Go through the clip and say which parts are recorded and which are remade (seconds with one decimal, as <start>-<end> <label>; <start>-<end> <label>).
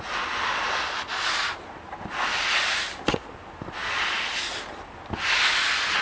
0.0-6.0 recorded